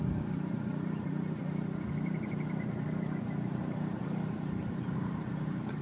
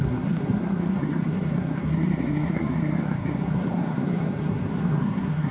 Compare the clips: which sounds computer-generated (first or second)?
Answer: second